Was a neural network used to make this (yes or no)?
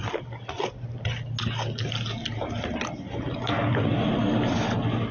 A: no